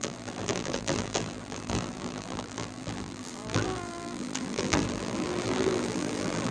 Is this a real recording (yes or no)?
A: no